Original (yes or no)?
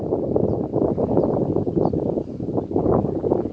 yes